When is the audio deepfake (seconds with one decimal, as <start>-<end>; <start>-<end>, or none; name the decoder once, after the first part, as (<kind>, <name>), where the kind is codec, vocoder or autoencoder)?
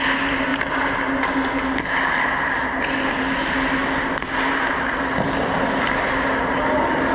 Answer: none